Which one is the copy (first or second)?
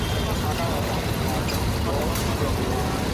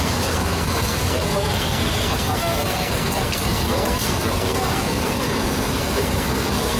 second